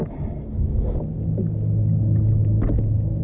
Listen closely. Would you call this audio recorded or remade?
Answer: recorded